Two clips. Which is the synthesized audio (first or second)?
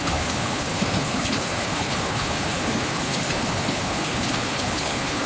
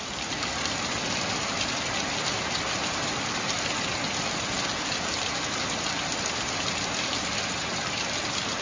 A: first